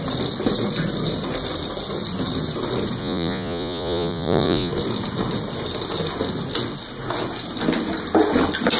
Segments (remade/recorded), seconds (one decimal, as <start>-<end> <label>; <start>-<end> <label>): 0.0-3.0 recorded; 3.0-4.7 remade; 4.7-8.8 recorded

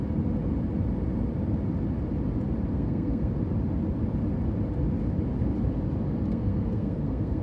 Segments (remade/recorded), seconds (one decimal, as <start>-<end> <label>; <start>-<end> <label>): 0.0-2.7 recorded; 2.7-3.3 remade; 3.3-6.3 recorded; 6.3-7.4 remade

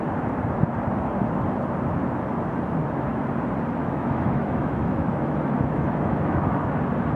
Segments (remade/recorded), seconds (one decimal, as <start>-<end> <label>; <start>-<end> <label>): 0.0-3.8 recorded; 3.8-6.6 remade; 6.6-7.2 recorded

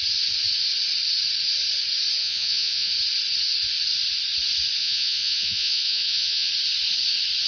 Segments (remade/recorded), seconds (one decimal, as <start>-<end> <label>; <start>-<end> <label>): 0.0-2.2 recorded; 2.2-2.9 remade; 2.9-4.8 recorded; 4.8-6.5 remade; 6.5-7.5 recorded

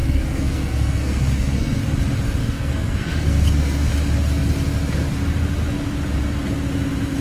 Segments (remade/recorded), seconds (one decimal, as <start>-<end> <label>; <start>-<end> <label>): 0.0-1.8 remade; 1.8-2.4 recorded; 2.4-3.9 remade; 3.9-7.2 recorded